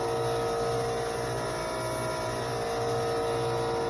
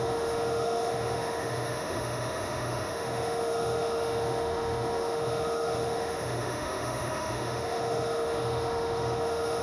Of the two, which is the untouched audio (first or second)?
first